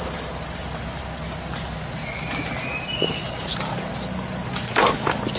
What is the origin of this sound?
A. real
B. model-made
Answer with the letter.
A